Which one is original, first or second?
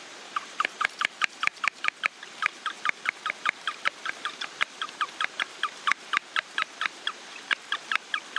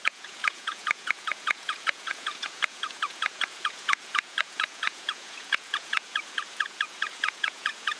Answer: first